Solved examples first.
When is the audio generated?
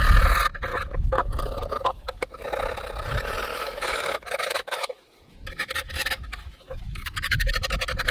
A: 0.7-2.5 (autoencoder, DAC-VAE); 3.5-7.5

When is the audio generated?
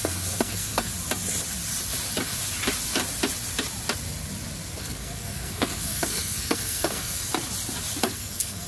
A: 0.0-0.9 (codec, SNAC); 4.8-7.3; 8.0-8.7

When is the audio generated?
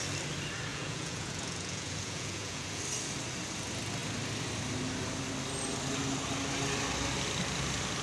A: 0.7-2.8 (vocoder, Vocos)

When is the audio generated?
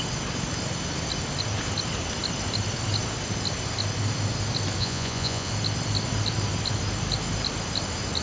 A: 4.8-5.5 (vocoder, Vocos)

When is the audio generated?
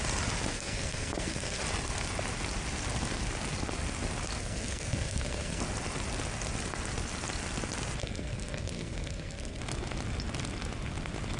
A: 0.5-1.6 (codec, SNAC); 4.4-5.6; 8.0-9.6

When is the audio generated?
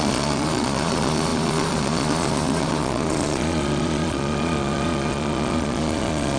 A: 0.0-6.4 (vocoder, Vocos)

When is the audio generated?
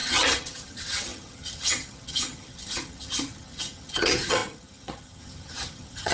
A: 0.0-6.1 (vocoder, HiFi-GAN)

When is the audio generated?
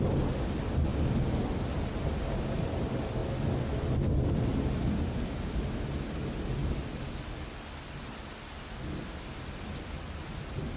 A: none